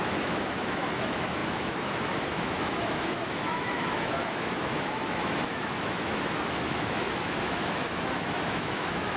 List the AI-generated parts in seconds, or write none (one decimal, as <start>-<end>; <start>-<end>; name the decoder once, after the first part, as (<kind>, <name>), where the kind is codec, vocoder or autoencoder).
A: 0.0-9.2 (autoencoder, DAC-VAE)